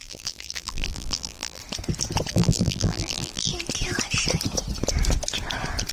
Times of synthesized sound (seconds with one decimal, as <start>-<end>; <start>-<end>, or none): 0.0-1.6; 2.3-3.5